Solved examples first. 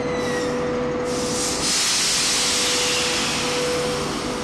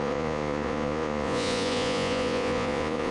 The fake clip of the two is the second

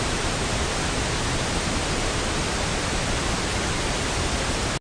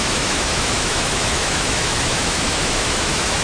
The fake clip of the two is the second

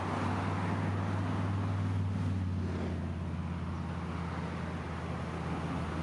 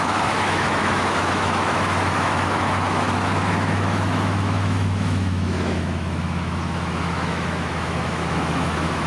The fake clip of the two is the second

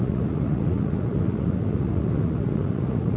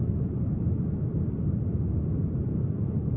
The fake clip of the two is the first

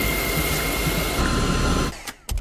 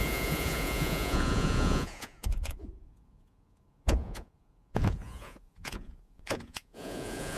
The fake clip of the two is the second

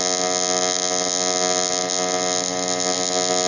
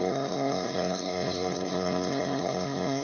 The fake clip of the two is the second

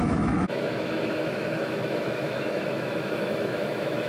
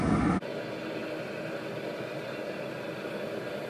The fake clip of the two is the first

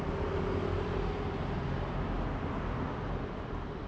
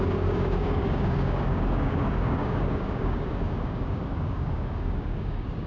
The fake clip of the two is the second